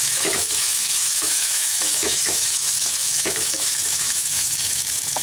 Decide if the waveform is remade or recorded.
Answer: remade